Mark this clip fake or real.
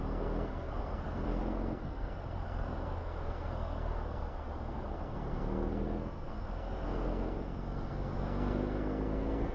fake